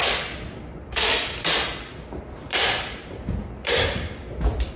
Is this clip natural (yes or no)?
no